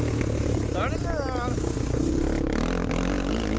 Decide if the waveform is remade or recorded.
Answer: recorded